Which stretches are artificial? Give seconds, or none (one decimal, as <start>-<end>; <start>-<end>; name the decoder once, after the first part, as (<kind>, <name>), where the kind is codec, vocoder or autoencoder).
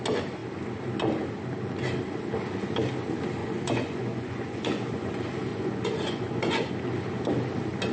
3.4-5.1 (vocoder, Vocos); 5.5-6.7